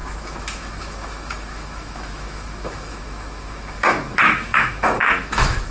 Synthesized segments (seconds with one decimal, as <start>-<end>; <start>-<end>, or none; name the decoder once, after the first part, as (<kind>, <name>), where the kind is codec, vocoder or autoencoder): 0.0-5.7 (autoencoder, DAC-VAE)